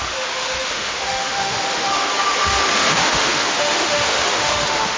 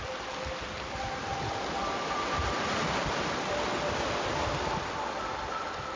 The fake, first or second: first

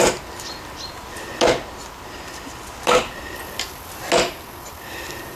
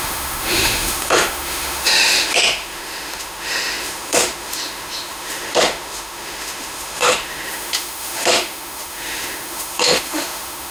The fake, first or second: second